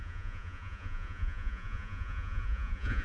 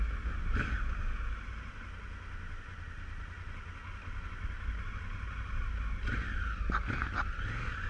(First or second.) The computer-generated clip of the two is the first